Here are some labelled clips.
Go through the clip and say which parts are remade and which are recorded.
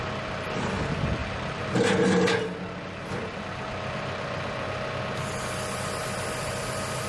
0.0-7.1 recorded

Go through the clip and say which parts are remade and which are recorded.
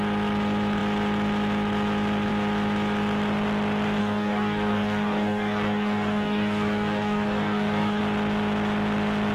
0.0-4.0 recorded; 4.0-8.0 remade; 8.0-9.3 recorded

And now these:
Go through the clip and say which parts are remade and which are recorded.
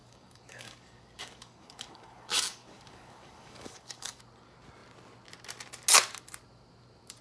0.0-4.2 remade; 4.2-7.2 recorded